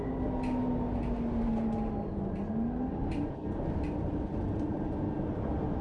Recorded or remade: recorded